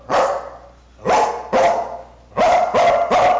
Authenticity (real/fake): real